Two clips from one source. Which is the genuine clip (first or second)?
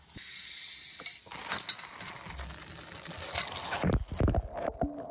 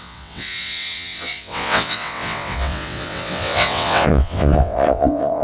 first